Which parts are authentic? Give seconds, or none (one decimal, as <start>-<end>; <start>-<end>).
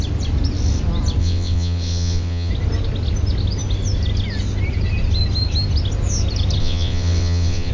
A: 0.0-1.2; 2.5-6.6